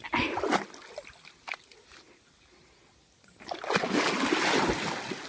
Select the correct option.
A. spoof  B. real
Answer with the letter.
B